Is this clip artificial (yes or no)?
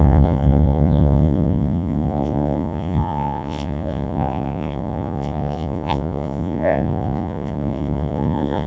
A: yes